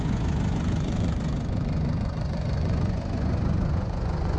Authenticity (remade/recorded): remade